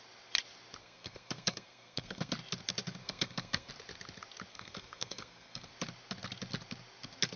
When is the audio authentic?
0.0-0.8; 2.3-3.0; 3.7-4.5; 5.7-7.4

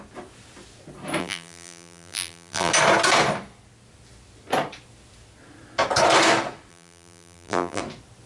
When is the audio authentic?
0.0-1.2; 2.7-6.7; 7.8-8.3

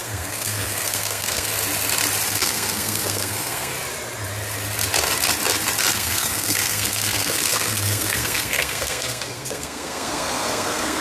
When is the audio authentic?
1.5-2.3; 3.7-5.9

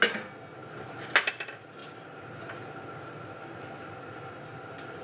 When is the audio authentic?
0.0-5.0

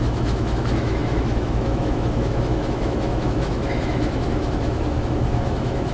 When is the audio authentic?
none

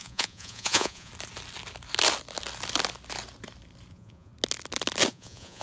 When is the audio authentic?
1.1-3.9; 4.3-5.1